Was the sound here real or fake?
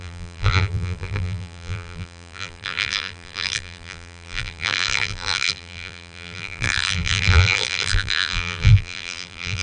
fake